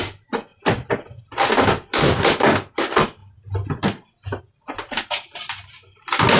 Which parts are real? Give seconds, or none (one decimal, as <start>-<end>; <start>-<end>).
0.0-6.4